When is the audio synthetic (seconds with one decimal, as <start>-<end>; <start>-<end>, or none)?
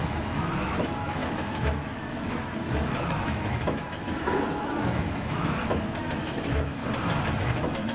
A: 0.0-6.8; 7.4-7.9